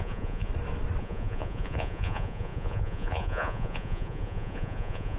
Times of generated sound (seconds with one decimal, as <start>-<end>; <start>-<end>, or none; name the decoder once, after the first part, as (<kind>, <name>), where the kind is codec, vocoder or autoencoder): 0.0-0.5 (vocoder, Vocos); 1.0-5.2